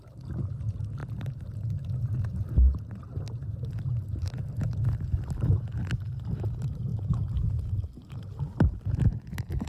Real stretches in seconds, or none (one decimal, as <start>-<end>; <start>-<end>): 0.0-9.7